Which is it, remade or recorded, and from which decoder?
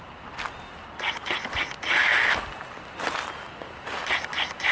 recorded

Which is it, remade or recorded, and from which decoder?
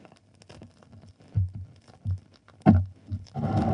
recorded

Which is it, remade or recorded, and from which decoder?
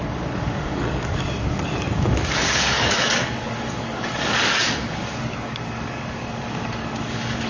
remade, codec, DAC